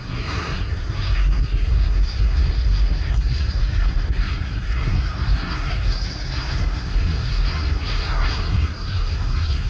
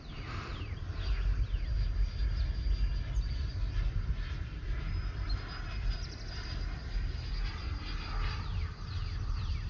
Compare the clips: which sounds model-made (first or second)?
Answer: first